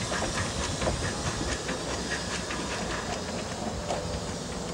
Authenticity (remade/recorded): recorded